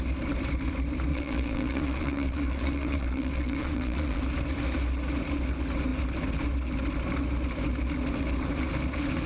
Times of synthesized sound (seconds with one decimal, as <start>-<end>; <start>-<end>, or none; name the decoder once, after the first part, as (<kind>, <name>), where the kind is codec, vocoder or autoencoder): 1.1-4.2 (vocoder, Vocos)